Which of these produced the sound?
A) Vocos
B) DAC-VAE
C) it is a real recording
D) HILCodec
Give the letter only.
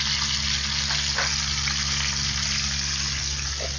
C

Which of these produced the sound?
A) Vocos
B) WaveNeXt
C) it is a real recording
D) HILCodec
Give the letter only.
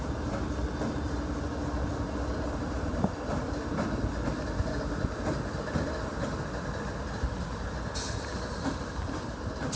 C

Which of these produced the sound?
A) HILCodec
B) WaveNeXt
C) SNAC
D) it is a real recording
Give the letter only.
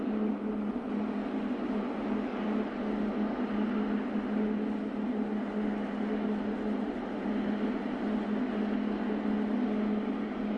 D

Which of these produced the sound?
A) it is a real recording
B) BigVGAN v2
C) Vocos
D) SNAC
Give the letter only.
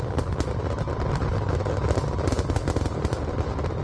A